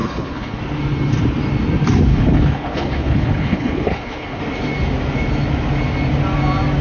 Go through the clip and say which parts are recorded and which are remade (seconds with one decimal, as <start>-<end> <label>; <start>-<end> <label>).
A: 0.0-0.6 remade; 0.6-2.1 recorded; 2.1-4.4 remade; 4.4-6.8 recorded